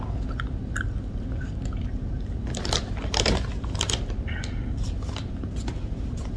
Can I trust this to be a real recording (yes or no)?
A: yes